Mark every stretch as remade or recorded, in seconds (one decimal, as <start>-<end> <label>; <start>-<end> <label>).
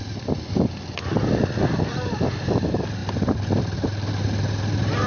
0.0-5.1 recorded